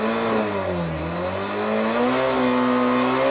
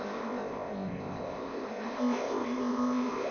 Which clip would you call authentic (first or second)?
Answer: first